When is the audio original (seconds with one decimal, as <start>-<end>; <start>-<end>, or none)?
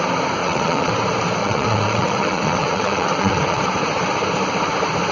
0.0-0.4; 0.9-1.4; 3.6-5.1